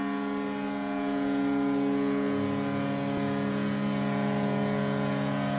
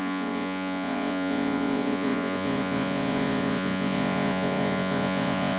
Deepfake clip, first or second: second